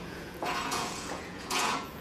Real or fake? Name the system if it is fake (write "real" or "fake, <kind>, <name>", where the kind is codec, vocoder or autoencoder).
fake, vocoder, Vocos